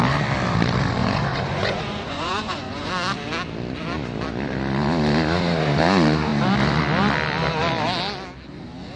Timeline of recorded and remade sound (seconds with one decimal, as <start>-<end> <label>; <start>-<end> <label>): 0.0-1.0 recorded; 1.0-2.9 remade; 2.9-9.0 recorded